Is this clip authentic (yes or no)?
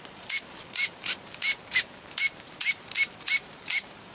no